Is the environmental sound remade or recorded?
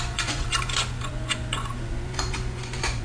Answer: remade